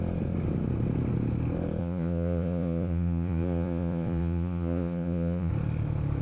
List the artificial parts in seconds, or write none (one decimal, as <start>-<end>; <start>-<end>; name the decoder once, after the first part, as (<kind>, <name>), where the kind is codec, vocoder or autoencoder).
1.8-5.5 (vocoder, Vocos)